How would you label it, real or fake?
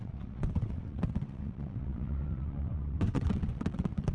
fake